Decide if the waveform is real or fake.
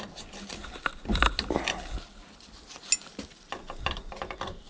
real